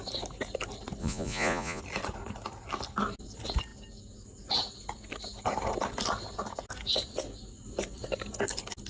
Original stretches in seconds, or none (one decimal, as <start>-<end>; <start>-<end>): 0.0-1.0; 1.8-8.9